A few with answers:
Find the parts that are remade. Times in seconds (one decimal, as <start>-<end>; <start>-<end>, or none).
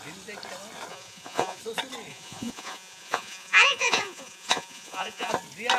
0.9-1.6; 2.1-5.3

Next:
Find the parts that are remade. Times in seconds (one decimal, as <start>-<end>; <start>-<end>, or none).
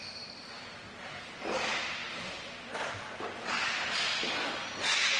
none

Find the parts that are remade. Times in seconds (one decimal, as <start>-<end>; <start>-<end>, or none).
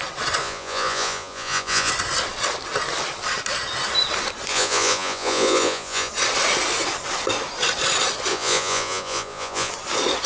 0.4-1.9; 4.5-6.1; 8.3-9.7